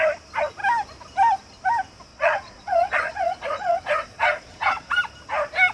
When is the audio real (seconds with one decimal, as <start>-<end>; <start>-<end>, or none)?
0.0-2.1; 4.9-5.7